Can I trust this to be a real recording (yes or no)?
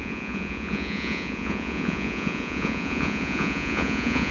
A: no